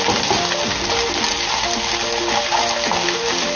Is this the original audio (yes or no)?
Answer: yes